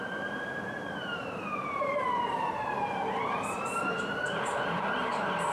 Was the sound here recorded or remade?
remade